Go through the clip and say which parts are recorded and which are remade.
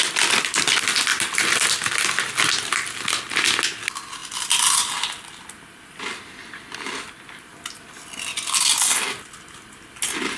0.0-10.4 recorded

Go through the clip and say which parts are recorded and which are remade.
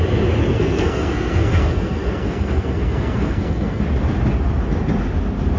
0.0-0.4 recorded; 0.4-3.8 remade; 3.8-5.6 recorded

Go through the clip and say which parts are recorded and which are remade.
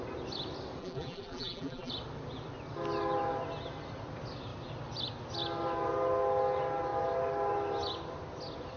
0.0-0.8 recorded; 0.8-1.9 remade; 1.9-8.8 recorded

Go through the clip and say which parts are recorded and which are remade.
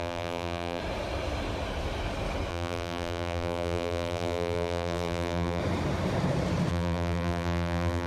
0.0-0.8 remade; 0.8-2.5 recorded; 2.5-5.6 remade; 5.6-6.7 recorded; 6.7-8.1 remade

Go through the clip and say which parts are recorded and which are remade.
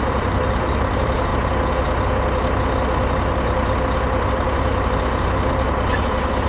0.0-1.3 remade; 1.3-4.3 recorded; 4.3-6.5 remade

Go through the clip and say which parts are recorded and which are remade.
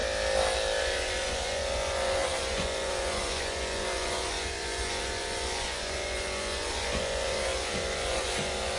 0.0-0.8 recorded; 0.8-8.8 remade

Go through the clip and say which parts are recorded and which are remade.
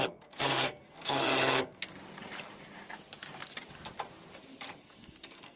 0.0-1.9 remade; 1.9-4.8 recorded; 4.8-5.6 remade